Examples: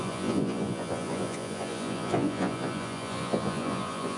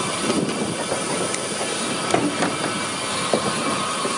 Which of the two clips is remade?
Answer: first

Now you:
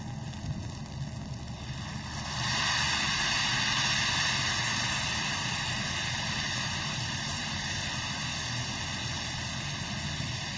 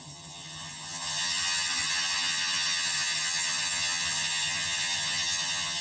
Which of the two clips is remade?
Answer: second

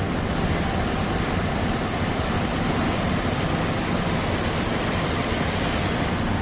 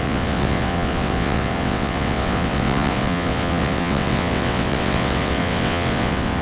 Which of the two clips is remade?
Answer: second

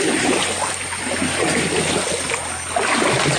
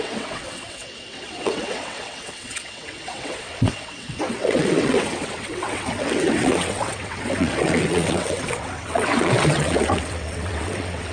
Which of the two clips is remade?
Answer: second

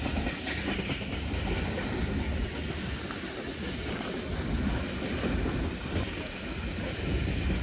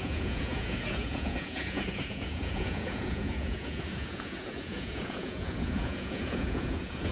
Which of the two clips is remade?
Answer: second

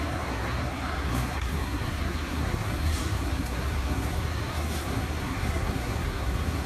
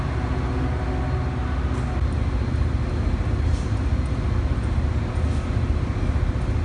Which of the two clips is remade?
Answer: first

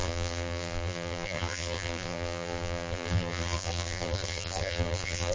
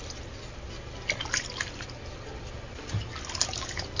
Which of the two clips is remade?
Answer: first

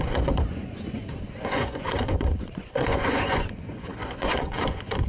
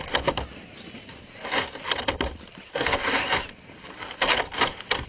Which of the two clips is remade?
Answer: first